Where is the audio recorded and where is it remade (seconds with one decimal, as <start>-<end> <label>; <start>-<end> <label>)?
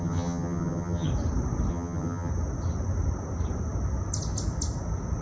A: 0.0-1.1 remade; 1.1-1.7 recorded; 1.7-2.3 remade; 2.3-5.2 recorded